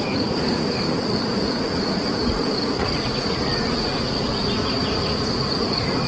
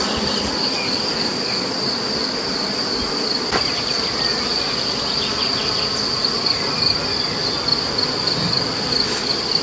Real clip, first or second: second